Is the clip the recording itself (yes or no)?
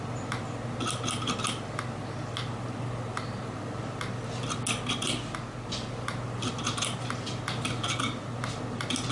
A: yes